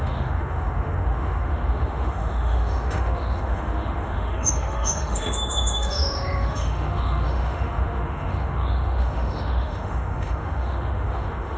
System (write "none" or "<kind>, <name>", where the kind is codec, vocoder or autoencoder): autoencoder, DAC-VAE